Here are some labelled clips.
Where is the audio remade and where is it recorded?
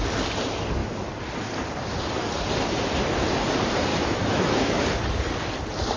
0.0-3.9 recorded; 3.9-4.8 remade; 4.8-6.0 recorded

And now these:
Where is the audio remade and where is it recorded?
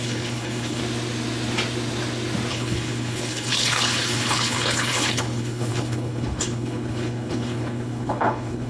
0.0-0.8 remade; 0.8-2.5 recorded; 2.5-8.7 remade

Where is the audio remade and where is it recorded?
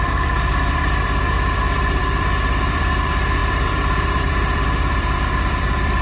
0.0-6.0 remade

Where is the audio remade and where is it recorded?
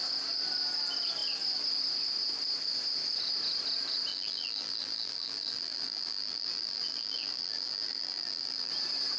0.0-4.1 recorded; 4.1-8.7 remade; 8.7-9.2 recorded